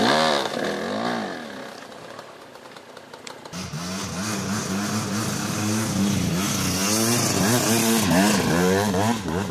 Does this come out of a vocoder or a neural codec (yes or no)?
no